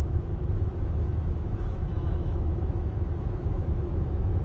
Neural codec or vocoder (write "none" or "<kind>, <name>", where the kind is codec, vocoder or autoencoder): autoencoder, DAC-VAE